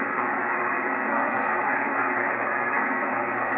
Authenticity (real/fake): fake